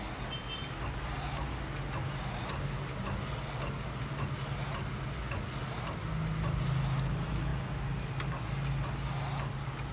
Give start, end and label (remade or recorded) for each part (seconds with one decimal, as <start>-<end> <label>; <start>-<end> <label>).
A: 0.0-9.9 recorded